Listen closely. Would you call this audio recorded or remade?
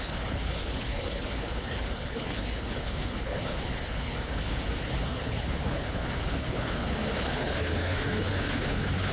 remade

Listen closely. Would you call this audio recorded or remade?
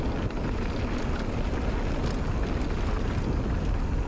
recorded